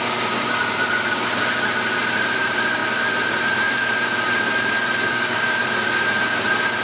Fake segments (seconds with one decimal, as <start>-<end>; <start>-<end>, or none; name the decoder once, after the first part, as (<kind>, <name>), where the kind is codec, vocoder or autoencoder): 5.1-5.6 (codec, DAC)